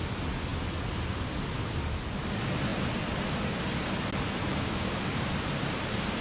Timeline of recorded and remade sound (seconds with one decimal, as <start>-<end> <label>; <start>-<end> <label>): 0.0-4.5 recorded; 4.5-5.0 remade; 5.0-6.2 recorded